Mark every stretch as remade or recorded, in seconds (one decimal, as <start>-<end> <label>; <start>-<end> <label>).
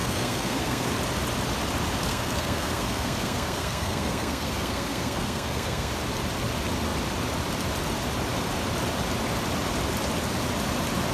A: 0.0-0.9 remade; 0.9-2.1 recorded; 2.1-5.9 remade; 5.9-11.1 recorded